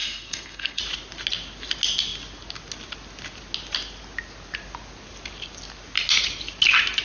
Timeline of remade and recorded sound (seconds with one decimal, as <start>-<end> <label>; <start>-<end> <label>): 0.0-0.8 remade; 0.8-7.0 recorded